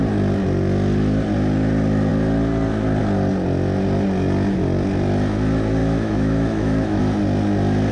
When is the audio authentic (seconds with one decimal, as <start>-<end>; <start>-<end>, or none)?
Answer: 0.0-5.8; 7.0-7.9